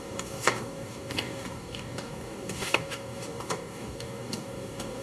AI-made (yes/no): yes